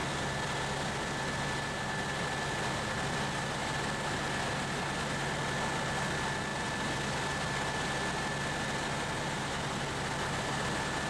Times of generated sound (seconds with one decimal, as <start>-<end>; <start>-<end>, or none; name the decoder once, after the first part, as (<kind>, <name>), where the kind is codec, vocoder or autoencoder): none

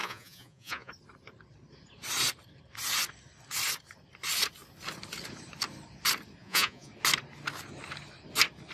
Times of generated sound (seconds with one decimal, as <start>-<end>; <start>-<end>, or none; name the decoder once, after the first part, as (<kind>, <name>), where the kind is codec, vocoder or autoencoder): 0.0-0.9 (vocoder, Vocos); 6.4-6.9

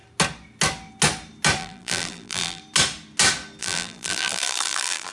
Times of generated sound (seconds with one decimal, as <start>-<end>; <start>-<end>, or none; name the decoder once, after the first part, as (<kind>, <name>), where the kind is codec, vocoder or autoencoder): 1.6-2.6 (vocoder, BigVGAN v2); 3.6-5.1